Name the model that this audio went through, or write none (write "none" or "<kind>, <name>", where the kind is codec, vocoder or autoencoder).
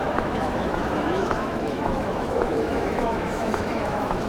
autoencoder, DAC-VAE